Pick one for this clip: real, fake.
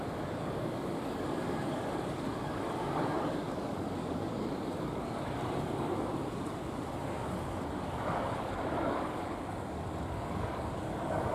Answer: fake